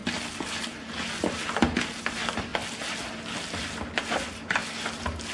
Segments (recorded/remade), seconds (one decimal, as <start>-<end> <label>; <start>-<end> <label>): 0.0-5.3 recorded